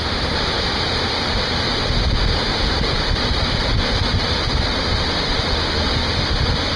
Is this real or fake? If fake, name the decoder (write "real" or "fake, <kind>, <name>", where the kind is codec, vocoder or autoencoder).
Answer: real